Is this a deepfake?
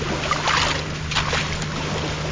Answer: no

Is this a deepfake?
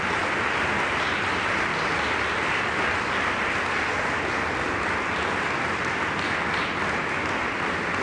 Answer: no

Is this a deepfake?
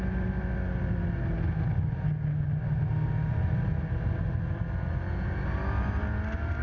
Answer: no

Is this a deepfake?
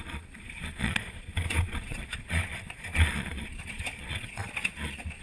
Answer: yes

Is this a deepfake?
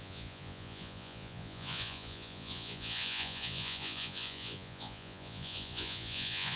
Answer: yes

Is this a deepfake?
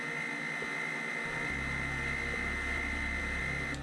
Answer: no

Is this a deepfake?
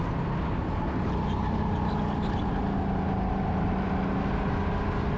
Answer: no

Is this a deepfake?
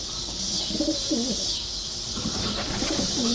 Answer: no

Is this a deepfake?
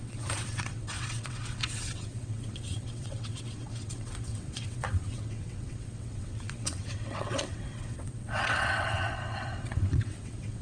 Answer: yes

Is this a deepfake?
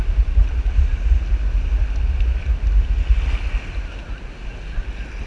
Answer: no